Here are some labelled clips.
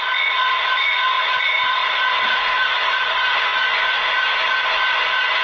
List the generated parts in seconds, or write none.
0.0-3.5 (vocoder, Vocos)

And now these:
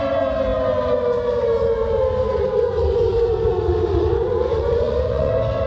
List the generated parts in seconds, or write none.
2.3-5.3 (vocoder, Vocos)